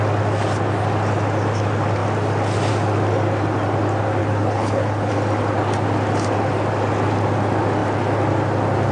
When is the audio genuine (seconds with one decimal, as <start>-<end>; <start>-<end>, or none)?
0.0-4.2; 5.1-8.9